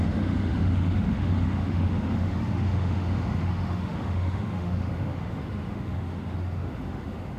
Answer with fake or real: fake